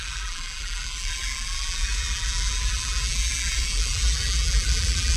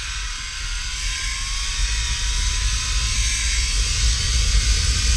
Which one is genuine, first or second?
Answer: second